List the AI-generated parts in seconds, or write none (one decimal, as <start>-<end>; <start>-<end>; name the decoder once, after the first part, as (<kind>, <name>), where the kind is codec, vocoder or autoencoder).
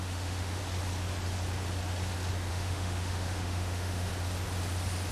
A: 0.0-0.6 (autoencoder, DAC-VAE); 2.5-4.1